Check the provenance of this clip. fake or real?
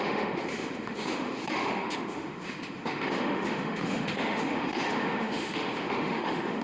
fake